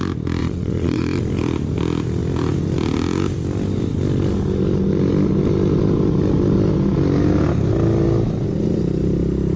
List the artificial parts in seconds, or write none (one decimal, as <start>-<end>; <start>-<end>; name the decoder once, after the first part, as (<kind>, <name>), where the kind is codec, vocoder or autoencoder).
0.4-1.2 (vocoder, Vocos)